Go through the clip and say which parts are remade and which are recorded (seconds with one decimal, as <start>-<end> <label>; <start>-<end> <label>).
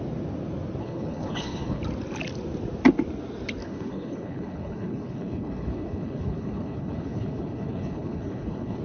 0.0-0.8 recorded; 0.8-1.8 remade; 1.8-3.6 recorded; 3.6-8.8 remade